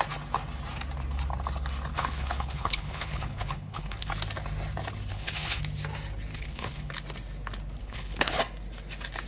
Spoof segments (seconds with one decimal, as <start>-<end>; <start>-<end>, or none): 1.9-4.1; 5.1-5.6; 6.3-6.9; 7.8-8.4